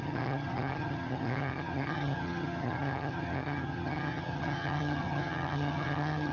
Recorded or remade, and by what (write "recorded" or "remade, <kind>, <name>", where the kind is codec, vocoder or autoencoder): remade, vocoder, HiFi-GAN